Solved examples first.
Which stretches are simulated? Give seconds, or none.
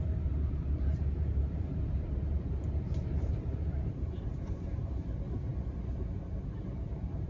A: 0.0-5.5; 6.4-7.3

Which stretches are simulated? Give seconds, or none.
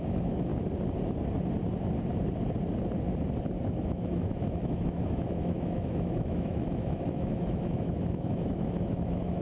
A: 0.0-0.5; 3.7-9.4